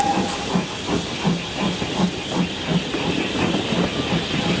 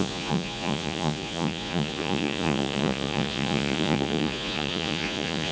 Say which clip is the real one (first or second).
first